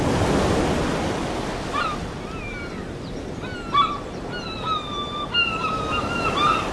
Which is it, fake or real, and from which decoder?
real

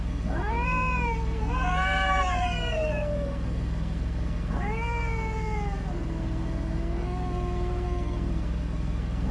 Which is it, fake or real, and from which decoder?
fake, codec, SNAC